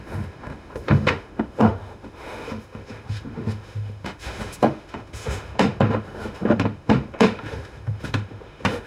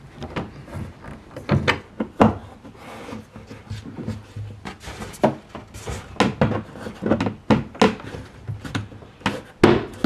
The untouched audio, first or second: second